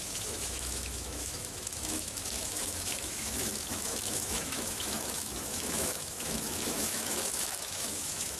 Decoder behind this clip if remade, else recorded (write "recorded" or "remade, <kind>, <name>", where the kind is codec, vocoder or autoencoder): remade, autoencoder, DAC-VAE